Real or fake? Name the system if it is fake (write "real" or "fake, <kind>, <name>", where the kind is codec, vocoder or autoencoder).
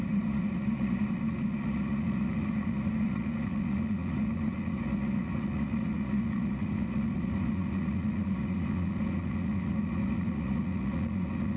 fake, vocoder, Vocos